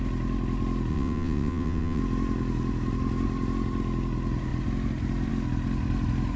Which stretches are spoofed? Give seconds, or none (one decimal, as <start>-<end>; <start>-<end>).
0.9-2.0